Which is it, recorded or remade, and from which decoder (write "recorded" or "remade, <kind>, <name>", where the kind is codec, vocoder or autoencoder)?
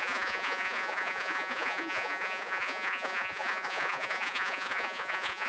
remade, vocoder, Vocos